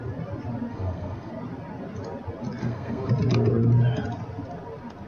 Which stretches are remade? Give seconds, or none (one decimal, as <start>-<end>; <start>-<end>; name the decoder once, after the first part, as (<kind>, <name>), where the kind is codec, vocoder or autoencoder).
0.7-1.3 (codec, SNAC); 2.6-3.1